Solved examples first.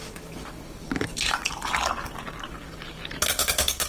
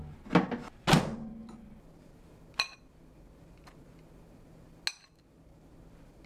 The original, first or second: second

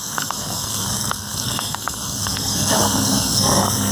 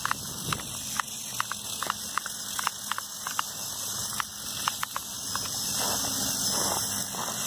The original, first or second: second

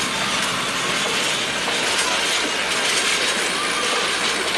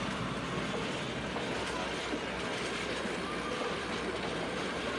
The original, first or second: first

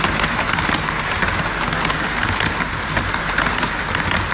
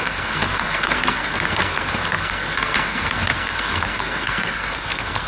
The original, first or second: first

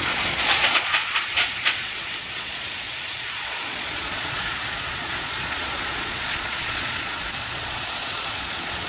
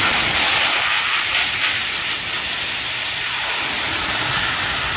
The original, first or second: second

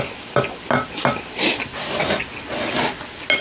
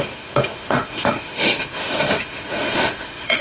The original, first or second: first